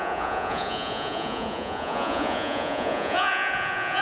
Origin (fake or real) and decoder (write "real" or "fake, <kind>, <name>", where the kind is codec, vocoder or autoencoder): fake, vocoder, Vocos